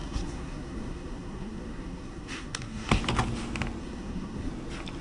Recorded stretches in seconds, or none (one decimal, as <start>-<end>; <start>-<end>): 3.0-3.8; 4.5-5.0